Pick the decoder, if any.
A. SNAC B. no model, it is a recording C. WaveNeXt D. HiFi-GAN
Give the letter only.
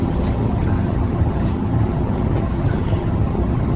D